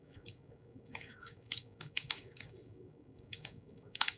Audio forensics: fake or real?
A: fake